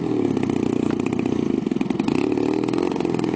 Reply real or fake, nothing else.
real